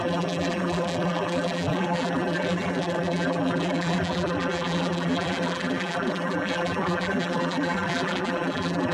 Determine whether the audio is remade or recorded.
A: remade